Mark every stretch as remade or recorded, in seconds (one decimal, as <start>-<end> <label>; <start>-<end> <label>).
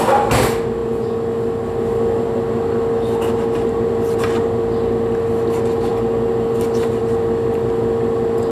0.0-8.5 recorded